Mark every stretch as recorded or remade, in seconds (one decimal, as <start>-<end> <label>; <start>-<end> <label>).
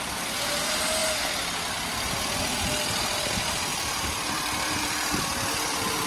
0.0-3.7 recorded; 3.7-4.8 remade; 4.8-6.1 recorded